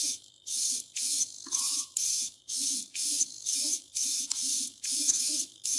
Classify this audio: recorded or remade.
remade